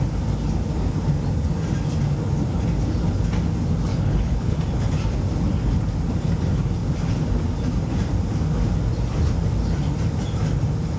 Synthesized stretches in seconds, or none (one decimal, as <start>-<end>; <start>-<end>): 3.9-4.6